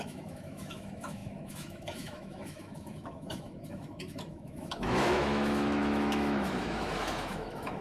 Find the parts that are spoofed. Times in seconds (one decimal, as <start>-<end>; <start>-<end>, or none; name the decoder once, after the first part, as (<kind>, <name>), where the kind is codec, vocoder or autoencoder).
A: 0.0-7.8 (autoencoder, DAC-VAE)